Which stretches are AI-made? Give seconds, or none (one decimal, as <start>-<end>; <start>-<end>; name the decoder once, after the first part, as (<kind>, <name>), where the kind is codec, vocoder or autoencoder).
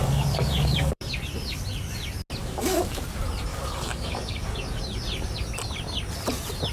0.0-1.1 (codec, DAC); 2.4-3.0; 3.5-4.8